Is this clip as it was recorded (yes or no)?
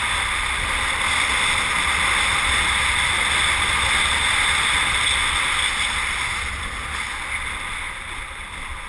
yes